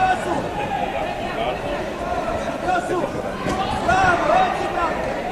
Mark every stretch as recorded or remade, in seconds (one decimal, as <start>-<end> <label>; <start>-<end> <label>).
0.0-5.3 remade